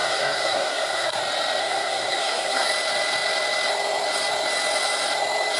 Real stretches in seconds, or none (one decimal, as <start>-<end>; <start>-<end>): 1.2-1.6; 2.7-5.6

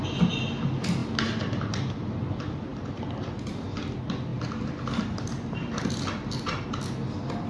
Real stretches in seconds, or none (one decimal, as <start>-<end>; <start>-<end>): 0.0-7.5

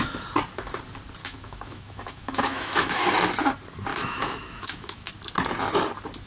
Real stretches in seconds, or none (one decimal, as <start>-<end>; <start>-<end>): 0.0-1.2; 3.1-3.9; 5.1-6.3

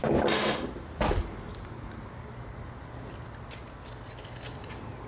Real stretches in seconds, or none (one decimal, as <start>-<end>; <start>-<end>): 0.0-5.1